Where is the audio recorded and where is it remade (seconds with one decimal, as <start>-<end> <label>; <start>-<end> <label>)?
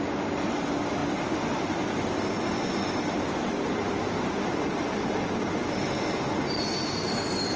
0.0-7.6 recorded